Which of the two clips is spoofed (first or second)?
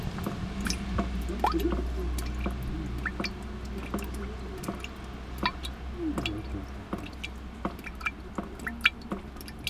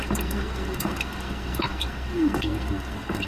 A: second